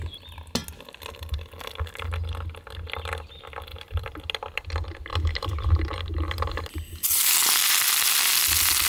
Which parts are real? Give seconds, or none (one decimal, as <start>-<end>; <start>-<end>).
0.0-3.7; 4.2-5.1; 6.6-8.9